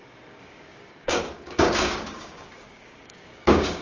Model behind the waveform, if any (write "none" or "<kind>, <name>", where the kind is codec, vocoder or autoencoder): codec, DAC